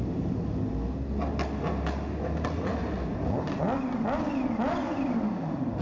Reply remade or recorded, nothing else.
recorded